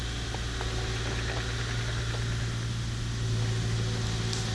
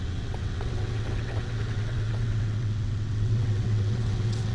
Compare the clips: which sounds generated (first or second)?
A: second